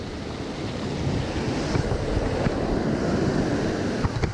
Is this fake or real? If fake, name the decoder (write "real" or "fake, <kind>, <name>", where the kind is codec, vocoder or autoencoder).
real